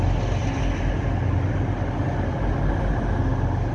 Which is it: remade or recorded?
recorded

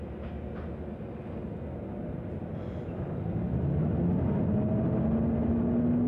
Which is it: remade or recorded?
recorded